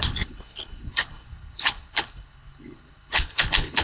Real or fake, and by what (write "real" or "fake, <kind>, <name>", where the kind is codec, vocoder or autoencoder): fake, codec, HILCodec